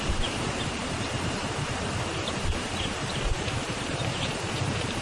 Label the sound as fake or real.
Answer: fake